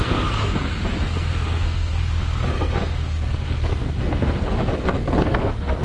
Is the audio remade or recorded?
remade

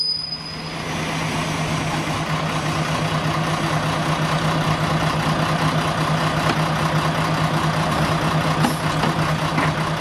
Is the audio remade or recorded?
recorded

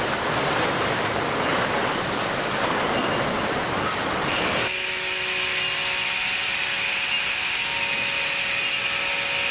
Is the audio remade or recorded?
recorded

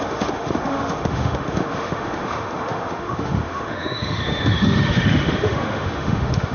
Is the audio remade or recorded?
remade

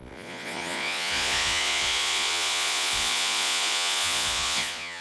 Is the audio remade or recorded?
remade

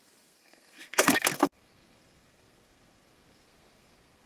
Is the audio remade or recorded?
remade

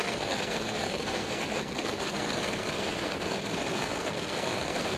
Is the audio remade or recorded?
remade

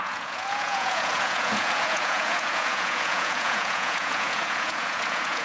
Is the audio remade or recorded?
remade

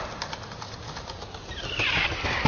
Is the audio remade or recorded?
recorded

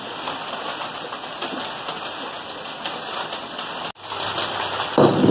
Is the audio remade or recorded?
recorded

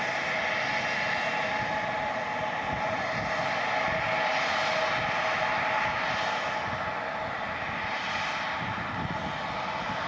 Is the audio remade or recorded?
recorded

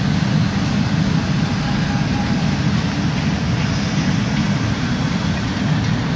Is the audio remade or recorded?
recorded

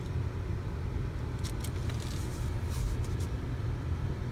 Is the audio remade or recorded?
recorded